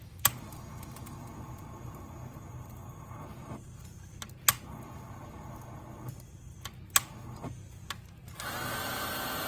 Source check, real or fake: real